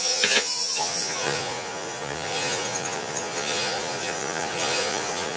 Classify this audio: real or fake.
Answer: fake